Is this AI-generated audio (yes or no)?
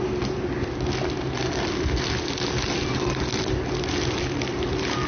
no